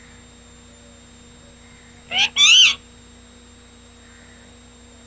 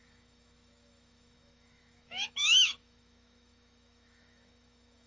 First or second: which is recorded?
first